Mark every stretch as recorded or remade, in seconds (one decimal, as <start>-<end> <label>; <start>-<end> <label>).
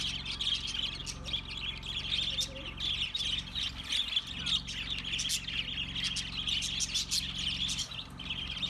0.0-8.7 recorded